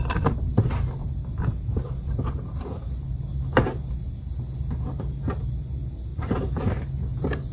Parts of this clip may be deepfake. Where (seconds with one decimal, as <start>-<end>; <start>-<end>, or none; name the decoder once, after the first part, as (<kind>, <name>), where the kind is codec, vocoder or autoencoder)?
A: none